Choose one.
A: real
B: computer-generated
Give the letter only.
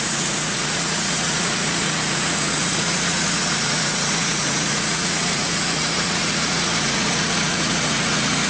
B